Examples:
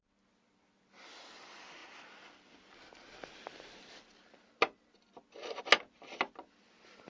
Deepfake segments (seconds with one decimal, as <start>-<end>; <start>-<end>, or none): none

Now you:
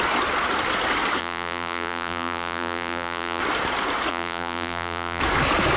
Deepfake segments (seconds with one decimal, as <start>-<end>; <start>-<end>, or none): 1.2-3.4; 4.1-5.2

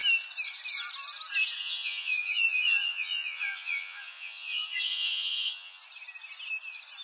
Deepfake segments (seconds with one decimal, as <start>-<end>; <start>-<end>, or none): 1.6-5.8

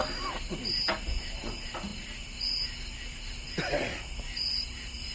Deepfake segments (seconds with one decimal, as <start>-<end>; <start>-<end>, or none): none

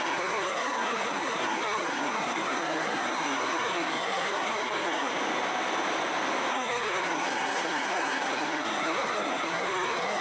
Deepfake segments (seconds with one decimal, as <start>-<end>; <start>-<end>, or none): 0.0-5.1; 6.5-10.2